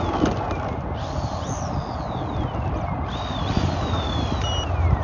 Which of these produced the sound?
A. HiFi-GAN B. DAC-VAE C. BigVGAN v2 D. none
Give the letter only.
D